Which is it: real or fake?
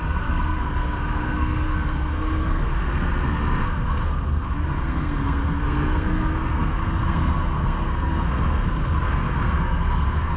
fake